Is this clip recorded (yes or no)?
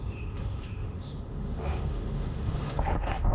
no